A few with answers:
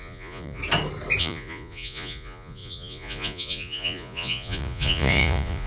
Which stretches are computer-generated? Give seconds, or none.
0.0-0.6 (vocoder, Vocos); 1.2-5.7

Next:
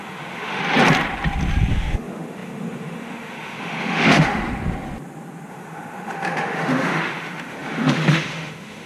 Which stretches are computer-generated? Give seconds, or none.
0.0-0.6 (autoencoder, DAC-VAE); 1.7-4.4; 5.5-8.9